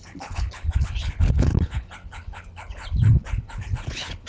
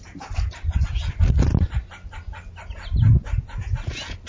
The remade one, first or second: first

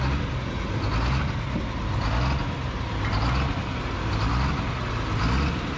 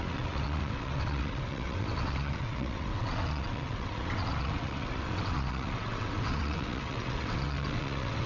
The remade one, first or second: second